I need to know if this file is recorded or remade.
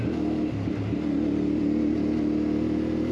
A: recorded